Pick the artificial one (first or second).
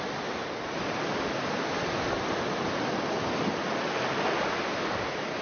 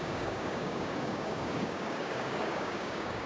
second